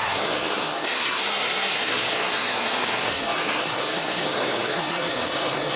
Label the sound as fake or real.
fake